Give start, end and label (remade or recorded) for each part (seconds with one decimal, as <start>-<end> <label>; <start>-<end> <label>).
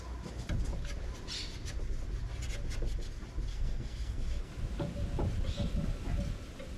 0.0-3.5 recorded; 3.5-4.5 remade; 4.5-6.8 recorded